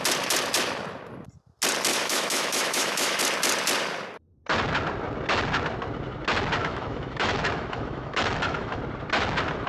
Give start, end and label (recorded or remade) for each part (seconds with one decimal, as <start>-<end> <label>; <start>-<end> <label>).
0.0-1.9 recorded; 1.9-3.2 remade; 3.2-6.6 recorded; 6.6-8.8 remade; 8.8-9.7 recorded